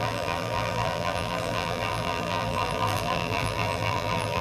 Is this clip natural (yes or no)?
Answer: no